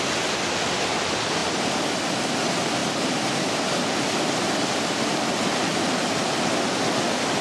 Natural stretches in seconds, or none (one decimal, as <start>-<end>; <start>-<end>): 0.0-2.8; 5.8-7.4